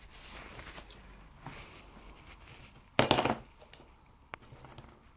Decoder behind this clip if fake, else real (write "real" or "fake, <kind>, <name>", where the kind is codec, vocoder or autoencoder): real